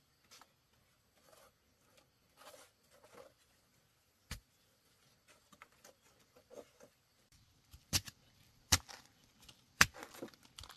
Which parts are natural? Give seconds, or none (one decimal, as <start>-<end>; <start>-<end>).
0.0-3.7; 4.8-5.4; 10.4-10.8